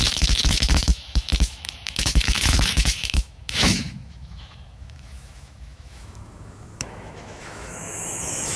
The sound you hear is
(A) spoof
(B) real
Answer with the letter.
A